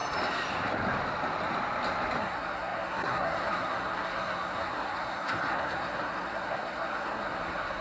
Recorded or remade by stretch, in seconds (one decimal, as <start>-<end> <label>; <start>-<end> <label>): 0.0-2.2 recorded; 2.2-7.8 remade